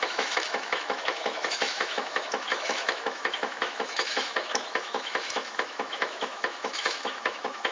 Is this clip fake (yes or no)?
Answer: yes